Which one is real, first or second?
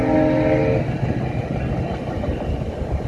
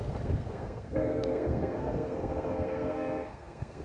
first